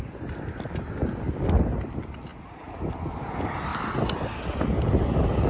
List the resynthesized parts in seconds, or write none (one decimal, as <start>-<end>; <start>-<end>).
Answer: none